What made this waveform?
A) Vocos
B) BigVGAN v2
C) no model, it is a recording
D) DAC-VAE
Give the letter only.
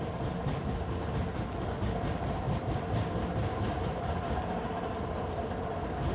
C